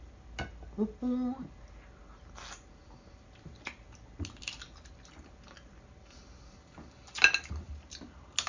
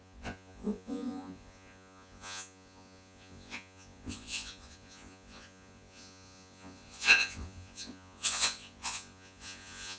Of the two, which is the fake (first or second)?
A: second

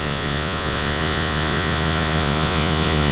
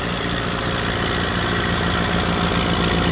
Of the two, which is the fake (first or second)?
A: first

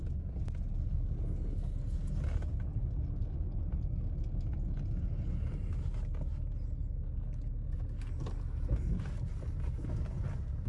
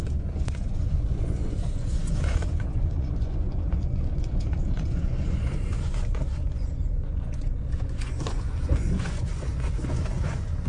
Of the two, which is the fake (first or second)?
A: second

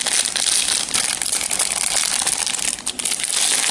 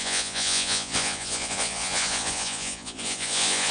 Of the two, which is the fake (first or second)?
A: second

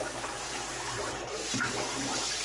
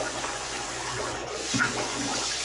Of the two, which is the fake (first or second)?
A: second